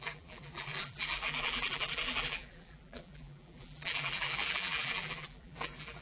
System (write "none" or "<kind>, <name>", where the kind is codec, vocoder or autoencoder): vocoder, BigVGAN v2